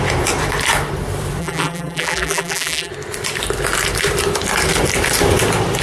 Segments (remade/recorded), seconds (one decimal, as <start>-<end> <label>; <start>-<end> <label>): 0.0-1.4 recorded; 1.4-2.9 remade; 2.9-5.8 recorded